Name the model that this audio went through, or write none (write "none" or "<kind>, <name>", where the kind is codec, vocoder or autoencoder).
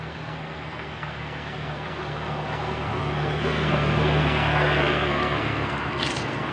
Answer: codec, SNAC